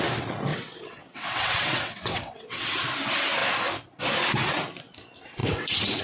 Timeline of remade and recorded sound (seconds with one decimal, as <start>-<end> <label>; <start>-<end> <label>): 0.0-0.5 recorded; 0.5-2.8 remade; 2.8-5.4 recorded; 5.4-6.0 remade